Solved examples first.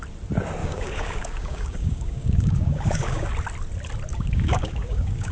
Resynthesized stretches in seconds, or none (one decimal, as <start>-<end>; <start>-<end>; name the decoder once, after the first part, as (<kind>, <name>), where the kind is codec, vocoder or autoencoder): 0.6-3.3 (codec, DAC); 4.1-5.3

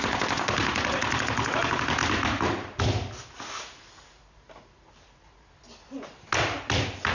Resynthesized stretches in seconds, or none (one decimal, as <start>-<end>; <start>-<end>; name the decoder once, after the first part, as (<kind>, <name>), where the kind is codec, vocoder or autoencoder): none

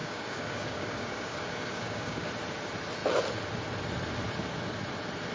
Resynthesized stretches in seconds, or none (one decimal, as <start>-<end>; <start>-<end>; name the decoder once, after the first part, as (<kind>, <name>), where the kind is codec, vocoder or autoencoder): 0.0-2.3 (codec, DAC)